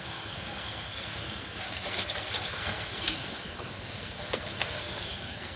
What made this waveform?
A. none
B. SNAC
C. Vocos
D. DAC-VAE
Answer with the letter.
B